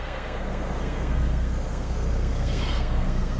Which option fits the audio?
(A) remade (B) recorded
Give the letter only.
A